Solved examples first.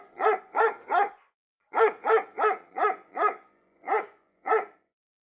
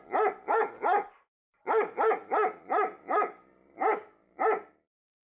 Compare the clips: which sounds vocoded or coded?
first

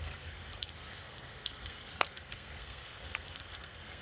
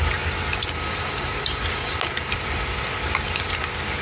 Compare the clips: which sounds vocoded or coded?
first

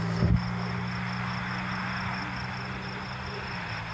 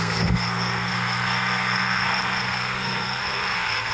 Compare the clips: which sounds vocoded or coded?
second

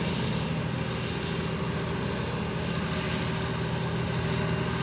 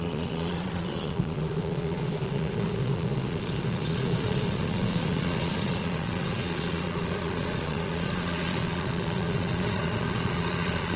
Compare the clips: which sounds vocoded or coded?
second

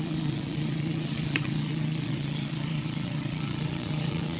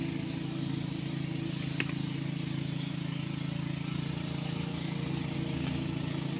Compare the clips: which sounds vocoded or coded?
first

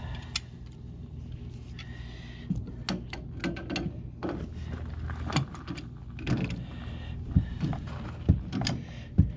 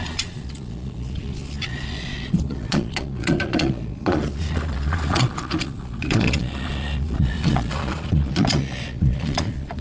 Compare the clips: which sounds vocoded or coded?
second